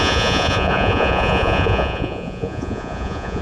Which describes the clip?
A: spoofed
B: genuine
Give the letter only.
A